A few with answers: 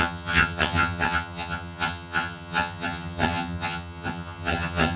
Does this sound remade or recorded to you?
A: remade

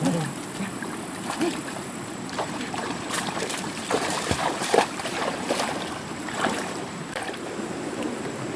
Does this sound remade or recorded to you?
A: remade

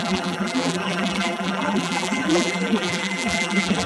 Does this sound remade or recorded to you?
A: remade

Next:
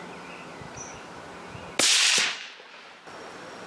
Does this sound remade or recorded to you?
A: recorded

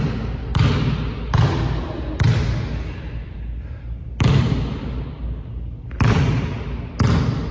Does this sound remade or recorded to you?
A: recorded